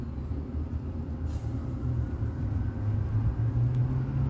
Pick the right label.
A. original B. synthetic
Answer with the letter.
A